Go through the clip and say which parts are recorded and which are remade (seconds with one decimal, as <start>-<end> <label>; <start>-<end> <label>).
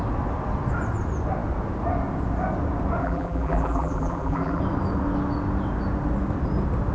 0.0-3.0 recorded; 3.0-4.6 remade; 4.6-6.9 recorded